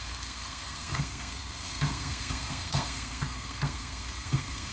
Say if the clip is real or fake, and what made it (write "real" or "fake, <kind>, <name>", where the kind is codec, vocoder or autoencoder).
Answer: fake, codec, SNAC